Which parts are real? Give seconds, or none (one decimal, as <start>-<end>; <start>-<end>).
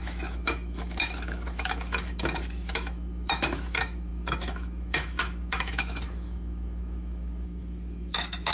none